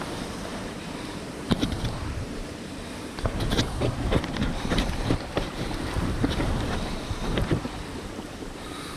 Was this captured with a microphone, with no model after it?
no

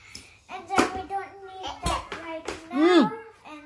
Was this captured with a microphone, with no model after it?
yes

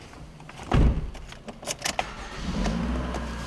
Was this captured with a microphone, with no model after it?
yes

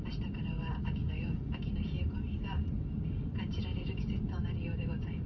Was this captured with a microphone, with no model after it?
no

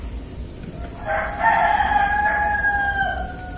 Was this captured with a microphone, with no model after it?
yes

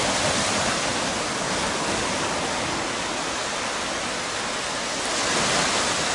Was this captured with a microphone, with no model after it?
yes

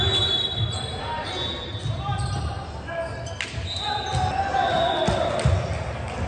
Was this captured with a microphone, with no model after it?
yes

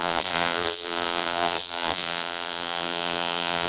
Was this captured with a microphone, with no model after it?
no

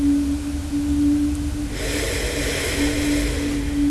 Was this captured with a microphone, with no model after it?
yes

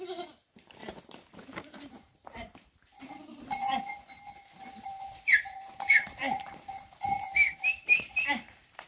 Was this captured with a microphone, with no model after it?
no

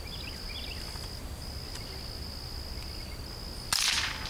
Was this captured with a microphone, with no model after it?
yes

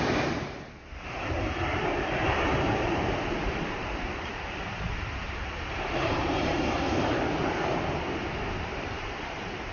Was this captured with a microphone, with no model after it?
no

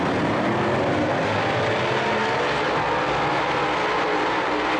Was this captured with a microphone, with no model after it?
yes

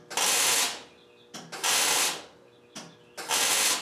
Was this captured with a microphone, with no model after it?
yes